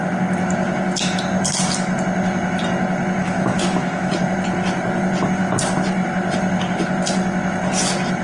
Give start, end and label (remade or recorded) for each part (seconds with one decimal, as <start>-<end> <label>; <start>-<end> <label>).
0.0-3.2 recorded; 3.2-4.1 remade; 4.1-8.2 recorded